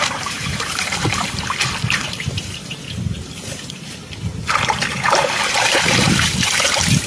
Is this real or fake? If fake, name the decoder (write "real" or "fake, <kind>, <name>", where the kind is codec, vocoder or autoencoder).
fake, vocoder, BigVGAN v2